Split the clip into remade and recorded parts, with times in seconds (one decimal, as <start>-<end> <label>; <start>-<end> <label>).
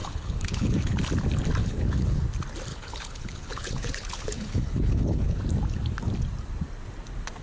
0.0-1.0 remade; 1.0-1.6 recorded; 1.6-2.2 remade; 2.2-2.7 recorded; 2.7-5.4 remade; 5.4-7.4 recorded